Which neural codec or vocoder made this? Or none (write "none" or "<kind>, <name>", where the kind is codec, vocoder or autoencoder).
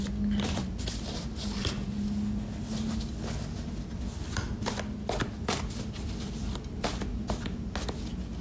none